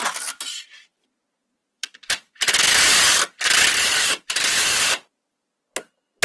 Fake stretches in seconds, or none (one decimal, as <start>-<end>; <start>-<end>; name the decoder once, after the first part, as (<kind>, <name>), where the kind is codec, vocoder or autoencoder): 1.6-2.4 (vocoder, BigVGAN v2); 3.7-5.6